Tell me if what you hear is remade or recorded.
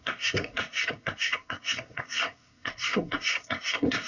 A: remade